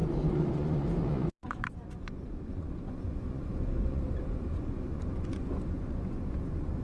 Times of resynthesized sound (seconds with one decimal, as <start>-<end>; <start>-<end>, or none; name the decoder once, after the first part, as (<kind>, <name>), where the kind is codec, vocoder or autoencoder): 0.0-6.8 (vocoder, Vocos)